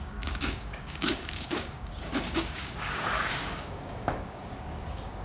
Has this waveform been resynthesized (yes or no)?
yes